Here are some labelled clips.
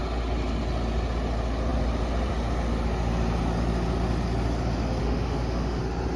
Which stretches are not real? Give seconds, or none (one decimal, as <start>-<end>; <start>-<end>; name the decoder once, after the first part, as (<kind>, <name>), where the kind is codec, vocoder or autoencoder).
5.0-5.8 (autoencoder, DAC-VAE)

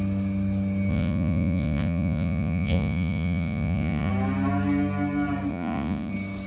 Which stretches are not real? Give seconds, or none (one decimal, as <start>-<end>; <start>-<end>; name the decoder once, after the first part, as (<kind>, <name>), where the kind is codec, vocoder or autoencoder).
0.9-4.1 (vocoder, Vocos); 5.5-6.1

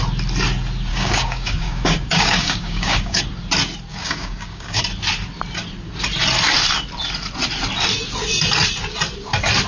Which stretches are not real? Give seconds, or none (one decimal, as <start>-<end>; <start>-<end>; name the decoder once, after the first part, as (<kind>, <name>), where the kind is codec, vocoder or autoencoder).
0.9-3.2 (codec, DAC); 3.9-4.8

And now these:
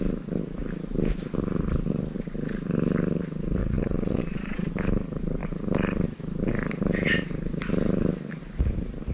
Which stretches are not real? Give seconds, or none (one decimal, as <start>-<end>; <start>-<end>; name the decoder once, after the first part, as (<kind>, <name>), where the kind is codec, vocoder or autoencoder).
3.6-4.7 (vocoder, Vocos)